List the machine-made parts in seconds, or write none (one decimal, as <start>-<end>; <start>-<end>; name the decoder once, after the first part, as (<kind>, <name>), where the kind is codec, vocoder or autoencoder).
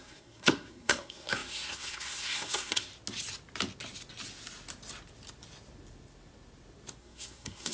0.0-2.9 (codec, SNAC); 7.0-7.7